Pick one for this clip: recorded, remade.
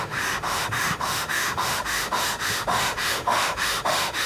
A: remade